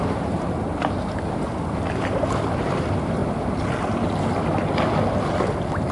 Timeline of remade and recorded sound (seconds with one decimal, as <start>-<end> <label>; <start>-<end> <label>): 0.0-3.2 remade; 3.2-5.9 recorded